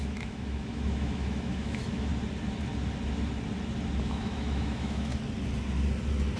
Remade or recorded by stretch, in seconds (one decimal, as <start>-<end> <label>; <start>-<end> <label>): 0.0-2.1 remade; 2.1-4.0 recorded; 4.0-5.1 remade; 5.1-6.4 recorded